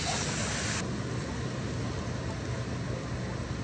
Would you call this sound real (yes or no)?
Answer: yes